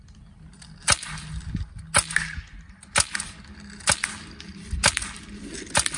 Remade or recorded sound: recorded